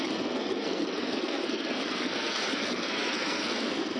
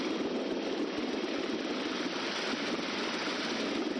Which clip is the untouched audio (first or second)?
second